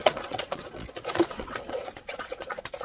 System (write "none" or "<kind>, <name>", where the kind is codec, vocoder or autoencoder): vocoder, Vocos